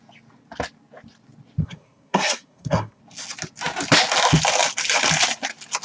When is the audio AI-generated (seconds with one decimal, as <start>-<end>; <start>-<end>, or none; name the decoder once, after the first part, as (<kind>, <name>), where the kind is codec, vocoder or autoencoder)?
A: 1.6-3.0 (codec, SNAC)